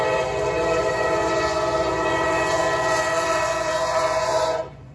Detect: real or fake fake